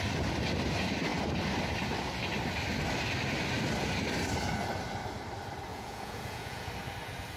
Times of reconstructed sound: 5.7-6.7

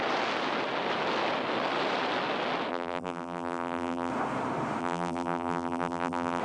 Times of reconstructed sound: 2.7-4.1; 4.8-6.4

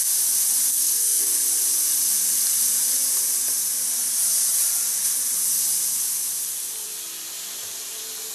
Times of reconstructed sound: 0.7-1.2

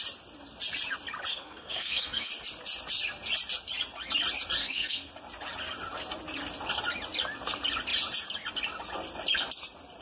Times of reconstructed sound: 1.3-2.3; 4.6-5.1